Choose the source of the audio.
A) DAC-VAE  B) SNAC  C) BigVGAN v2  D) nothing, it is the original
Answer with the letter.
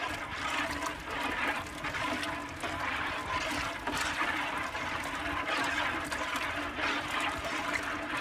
D